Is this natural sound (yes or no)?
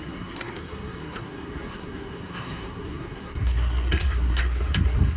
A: no